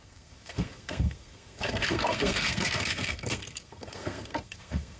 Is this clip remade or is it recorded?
remade